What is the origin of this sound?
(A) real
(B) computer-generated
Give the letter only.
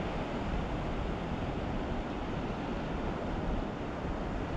A